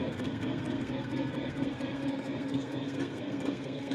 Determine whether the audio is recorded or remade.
remade